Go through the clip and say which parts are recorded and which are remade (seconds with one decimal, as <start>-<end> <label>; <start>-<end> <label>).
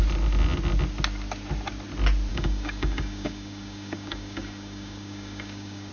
0.0-2.3 recorded; 2.3-5.9 remade